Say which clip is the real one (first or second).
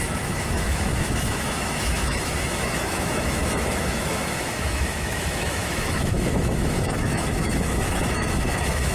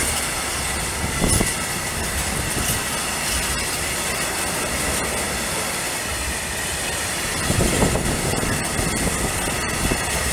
second